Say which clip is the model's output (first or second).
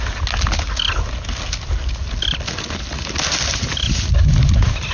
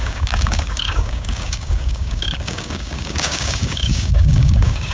second